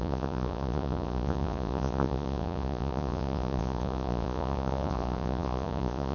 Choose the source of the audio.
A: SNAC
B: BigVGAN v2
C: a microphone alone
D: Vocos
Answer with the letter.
D